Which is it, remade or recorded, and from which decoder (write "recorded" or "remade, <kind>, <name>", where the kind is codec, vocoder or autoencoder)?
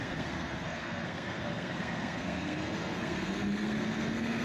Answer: remade, codec, SNAC